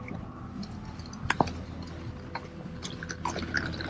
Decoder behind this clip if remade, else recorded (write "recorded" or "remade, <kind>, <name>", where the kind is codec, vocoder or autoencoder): recorded